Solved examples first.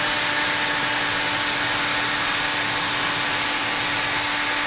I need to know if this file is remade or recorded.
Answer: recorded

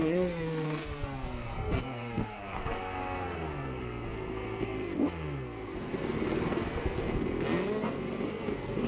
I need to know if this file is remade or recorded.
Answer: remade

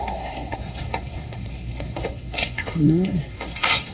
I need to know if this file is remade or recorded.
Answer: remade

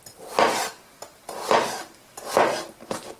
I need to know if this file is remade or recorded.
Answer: recorded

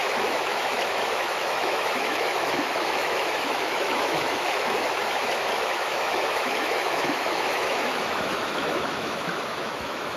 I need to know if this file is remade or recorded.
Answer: remade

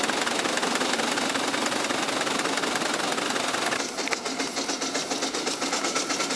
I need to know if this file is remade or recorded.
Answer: recorded